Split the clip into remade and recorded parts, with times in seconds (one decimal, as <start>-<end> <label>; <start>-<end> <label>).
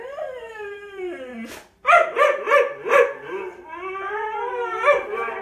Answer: 0.0-1.3 remade; 1.3-4.5 recorded; 4.5-5.4 remade